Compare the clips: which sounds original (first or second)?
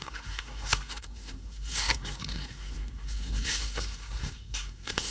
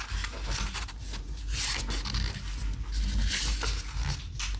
second